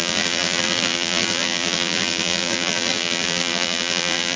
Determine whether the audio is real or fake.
fake